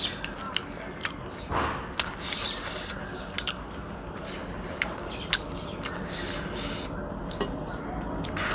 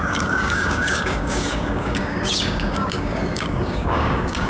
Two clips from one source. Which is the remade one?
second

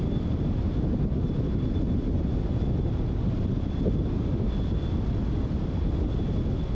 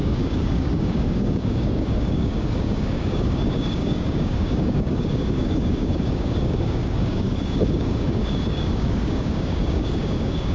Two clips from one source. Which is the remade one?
second